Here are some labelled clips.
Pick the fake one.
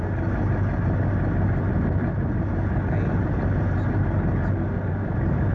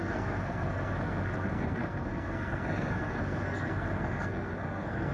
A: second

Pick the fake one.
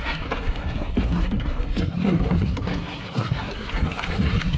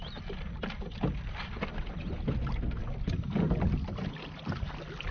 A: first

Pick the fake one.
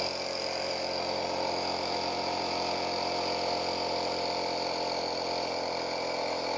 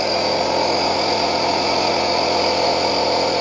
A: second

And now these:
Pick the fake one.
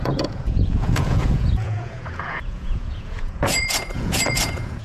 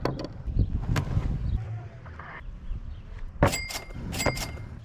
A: first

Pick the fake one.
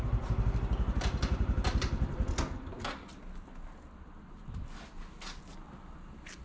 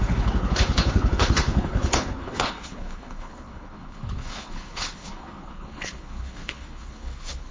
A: second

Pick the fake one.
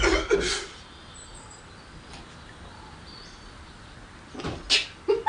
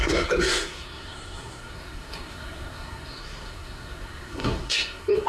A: second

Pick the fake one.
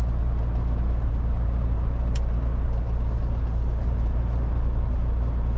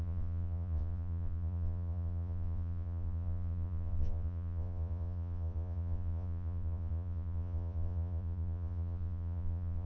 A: second